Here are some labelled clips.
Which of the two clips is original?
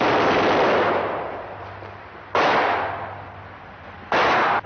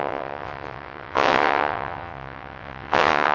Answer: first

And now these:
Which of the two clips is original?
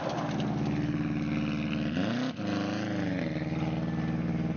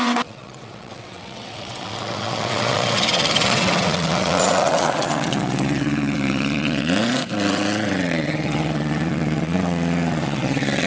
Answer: first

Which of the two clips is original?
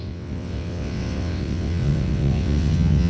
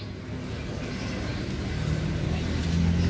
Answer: second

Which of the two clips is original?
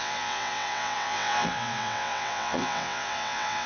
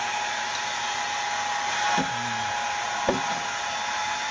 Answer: second